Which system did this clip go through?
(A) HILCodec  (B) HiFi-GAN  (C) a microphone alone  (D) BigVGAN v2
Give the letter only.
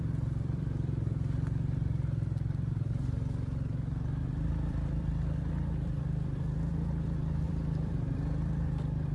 D